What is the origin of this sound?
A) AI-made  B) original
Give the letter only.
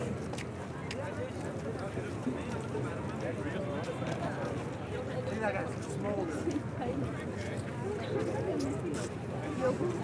B